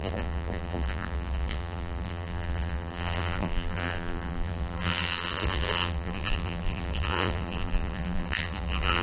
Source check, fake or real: fake